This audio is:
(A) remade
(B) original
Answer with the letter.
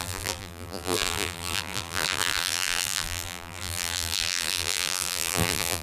A